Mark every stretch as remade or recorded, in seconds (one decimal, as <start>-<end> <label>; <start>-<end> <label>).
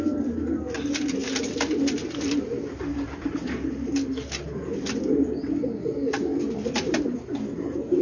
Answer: 0.0-8.0 recorded